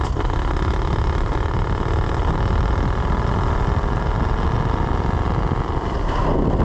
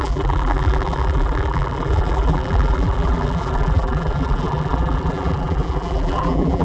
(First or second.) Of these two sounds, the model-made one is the second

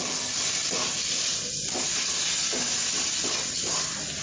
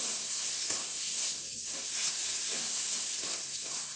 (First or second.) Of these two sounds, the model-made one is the second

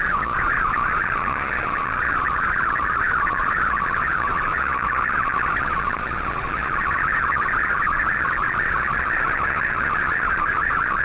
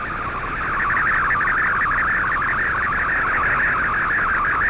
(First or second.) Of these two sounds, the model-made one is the first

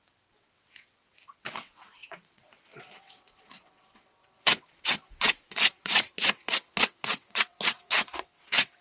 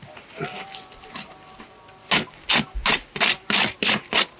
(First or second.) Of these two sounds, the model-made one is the first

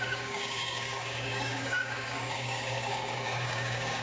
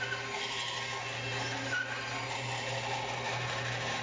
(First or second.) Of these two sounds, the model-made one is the first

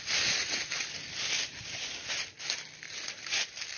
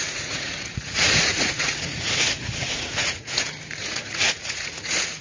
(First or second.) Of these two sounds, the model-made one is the second